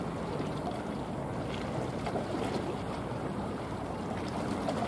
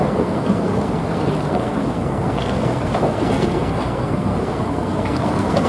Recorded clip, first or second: first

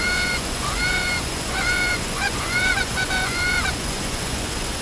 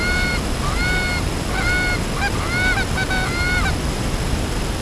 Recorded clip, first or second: second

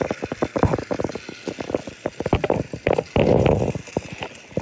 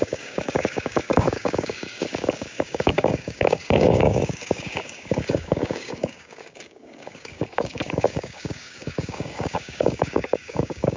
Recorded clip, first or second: first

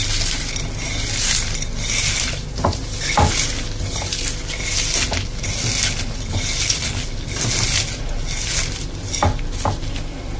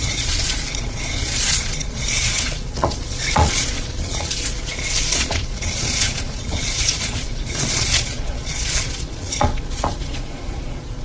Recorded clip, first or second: first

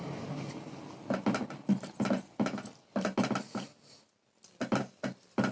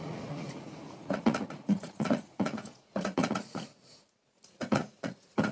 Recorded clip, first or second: first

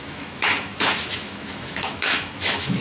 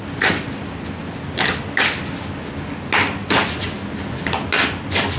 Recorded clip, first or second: second